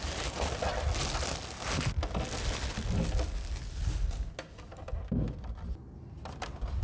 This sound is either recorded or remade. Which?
recorded